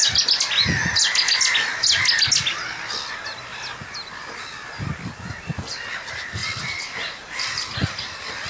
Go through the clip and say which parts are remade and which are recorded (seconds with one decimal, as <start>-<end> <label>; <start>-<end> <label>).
0.0-8.5 recorded